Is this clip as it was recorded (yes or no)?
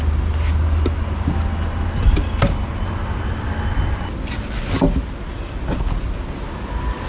yes